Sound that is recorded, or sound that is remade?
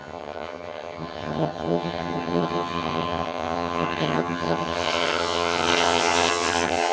remade